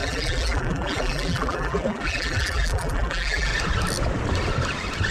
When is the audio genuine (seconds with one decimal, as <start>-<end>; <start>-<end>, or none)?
3.5-5.1